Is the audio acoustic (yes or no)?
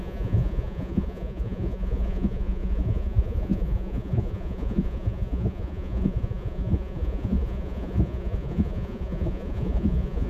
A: no